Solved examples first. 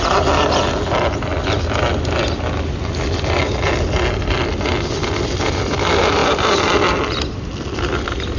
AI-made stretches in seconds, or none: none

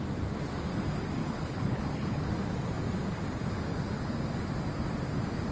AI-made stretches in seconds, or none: 1.2-2.3 (codec, HILCodec)

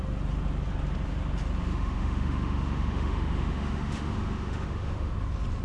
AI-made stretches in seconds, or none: 1.7-5.1 (autoencoder, DAC-VAE)

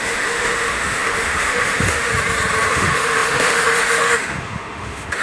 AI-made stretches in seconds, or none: 0.0-2.1 (autoencoder, DAC-VAE); 2.7-5.2